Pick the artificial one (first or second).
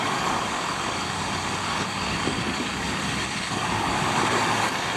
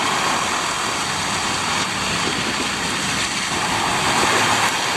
first